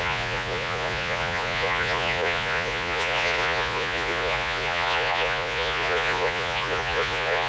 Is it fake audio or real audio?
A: fake